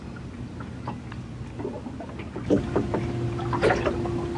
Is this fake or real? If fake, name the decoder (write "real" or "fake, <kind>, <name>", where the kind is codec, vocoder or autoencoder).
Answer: real